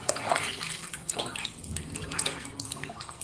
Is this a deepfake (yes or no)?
yes